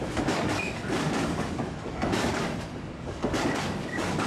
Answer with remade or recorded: remade